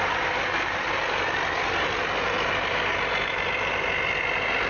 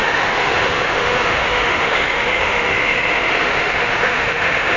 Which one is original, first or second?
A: first